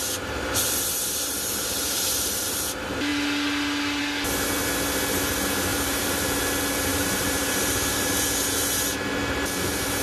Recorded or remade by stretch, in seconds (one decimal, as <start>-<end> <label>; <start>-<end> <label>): 0.0-5.7 recorded; 5.7-6.3 remade; 6.3-6.9 recorded; 6.9-8.1 remade; 8.1-10.0 recorded